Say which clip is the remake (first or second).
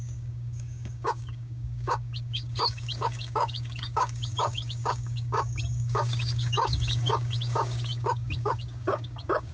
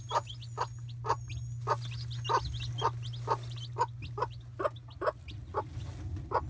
first